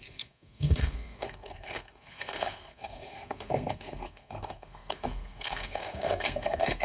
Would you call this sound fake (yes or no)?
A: yes